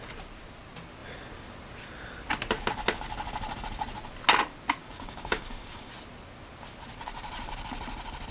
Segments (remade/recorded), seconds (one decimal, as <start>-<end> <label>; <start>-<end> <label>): 0.0-4.8 recorded; 4.8-5.9 remade; 5.9-8.3 recorded